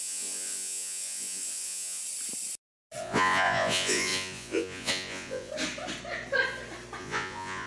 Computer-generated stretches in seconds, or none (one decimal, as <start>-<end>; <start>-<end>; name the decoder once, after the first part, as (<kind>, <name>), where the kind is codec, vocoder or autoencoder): 0.0-2.0 (vocoder, Vocos); 3.0-5.5; 7.0-7.7